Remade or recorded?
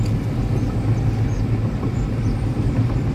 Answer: recorded